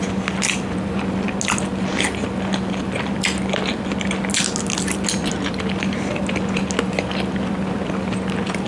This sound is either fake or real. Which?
real